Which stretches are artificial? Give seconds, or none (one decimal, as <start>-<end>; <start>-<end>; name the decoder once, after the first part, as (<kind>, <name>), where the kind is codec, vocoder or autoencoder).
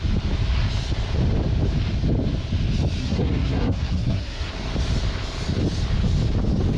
3.0-4.5 (codec, SNAC)